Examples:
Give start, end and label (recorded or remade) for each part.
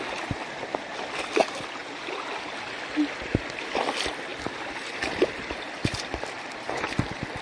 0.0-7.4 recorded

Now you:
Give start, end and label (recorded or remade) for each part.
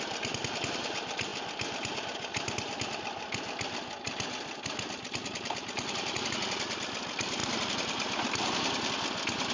0.0-9.5 recorded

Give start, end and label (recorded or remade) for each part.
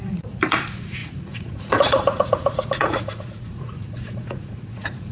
0.0-5.1 remade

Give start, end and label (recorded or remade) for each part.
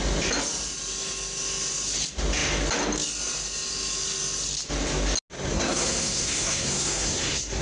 0.0-5.5 recorded; 5.5-7.6 remade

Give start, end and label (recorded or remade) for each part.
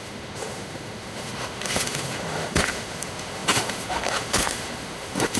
0.0-5.4 remade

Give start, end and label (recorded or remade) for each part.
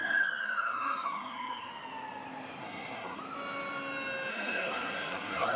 0.0-1.7 remade; 1.7-2.6 recorded; 2.6-3.2 remade; 3.2-4.3 recorded; 4.3-5.6 remade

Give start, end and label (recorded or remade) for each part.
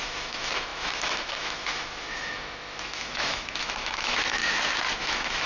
0.0-4.4 remade; 4.4-5.0 recorded; 5.0-5.5 remade